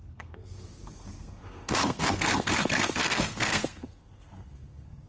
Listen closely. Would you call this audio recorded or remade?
remade